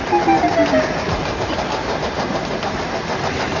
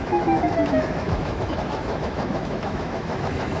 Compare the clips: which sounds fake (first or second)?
second